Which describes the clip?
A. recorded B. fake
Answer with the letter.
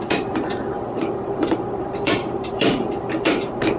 B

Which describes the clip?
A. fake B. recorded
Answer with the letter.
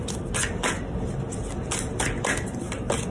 B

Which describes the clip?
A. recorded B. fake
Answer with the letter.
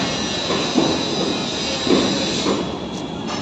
A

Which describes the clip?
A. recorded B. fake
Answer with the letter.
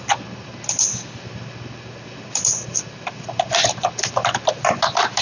A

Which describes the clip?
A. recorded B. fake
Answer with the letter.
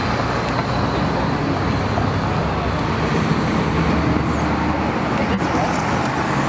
A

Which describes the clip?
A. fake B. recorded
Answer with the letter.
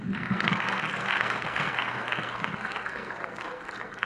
A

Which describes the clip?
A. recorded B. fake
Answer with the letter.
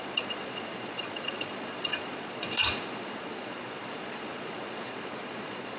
B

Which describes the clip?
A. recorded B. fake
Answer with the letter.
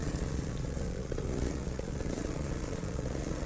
B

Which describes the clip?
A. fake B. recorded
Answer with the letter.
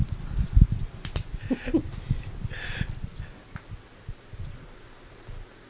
B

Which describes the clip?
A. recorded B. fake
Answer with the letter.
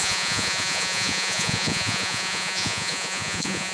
B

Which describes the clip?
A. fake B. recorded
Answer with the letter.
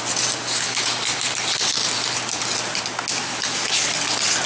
B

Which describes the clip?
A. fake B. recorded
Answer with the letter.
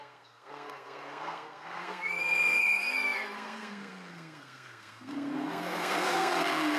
A